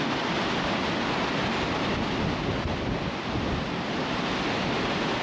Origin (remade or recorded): recorded